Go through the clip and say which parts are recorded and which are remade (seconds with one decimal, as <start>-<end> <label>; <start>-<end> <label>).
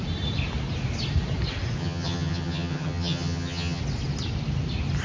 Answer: 0.0-1.8 recorded; 1.8-3.8 remade; 3.8-5.0 recorded